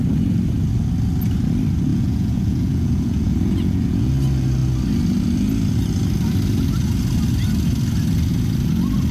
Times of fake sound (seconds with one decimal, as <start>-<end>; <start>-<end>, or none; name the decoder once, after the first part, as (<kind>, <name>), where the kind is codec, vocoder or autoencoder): 1.9-4.1 (vocoder, Vocos)